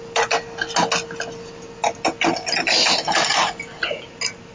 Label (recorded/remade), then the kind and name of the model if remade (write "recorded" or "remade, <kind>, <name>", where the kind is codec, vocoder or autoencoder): recorded